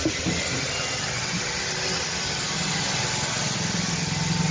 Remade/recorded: recorded